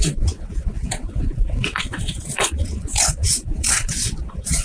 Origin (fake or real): fake